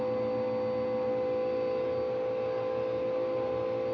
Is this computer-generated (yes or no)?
no